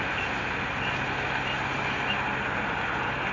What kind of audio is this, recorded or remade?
recorded